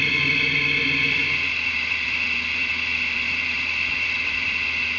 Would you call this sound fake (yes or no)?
yes